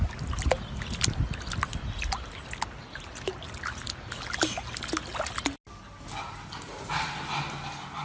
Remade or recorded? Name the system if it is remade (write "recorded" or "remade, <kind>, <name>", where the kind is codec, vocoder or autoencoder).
recorded